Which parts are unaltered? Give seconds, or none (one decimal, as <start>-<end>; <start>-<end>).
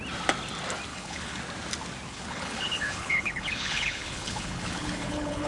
0.0-0.9; 1.4-2.1